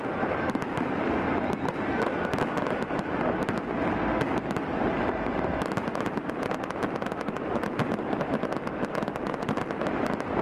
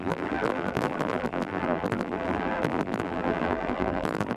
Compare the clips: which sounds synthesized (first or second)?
second